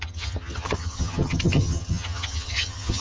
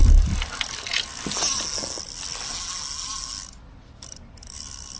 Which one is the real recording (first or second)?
second